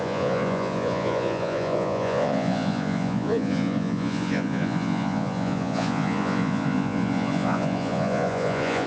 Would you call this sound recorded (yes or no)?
no